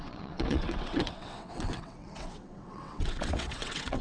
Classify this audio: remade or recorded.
remade